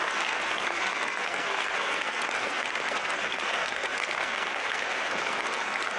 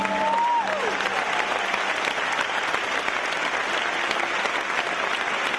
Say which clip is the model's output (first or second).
first